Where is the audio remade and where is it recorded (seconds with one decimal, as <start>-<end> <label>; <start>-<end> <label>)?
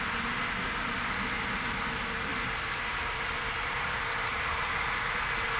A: 0.0-5.6 recorded